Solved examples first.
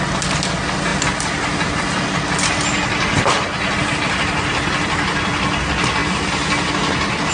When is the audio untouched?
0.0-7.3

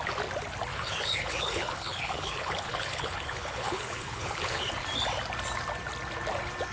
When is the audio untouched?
0.0-0.7; 4.7-6.7

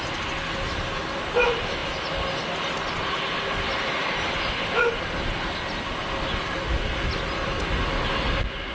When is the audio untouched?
0.0-8.7

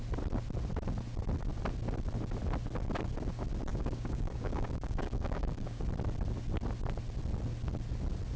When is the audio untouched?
0.0-3.7; 5.8-8.4